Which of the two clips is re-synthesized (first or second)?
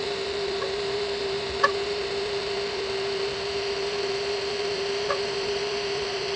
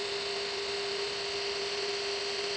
first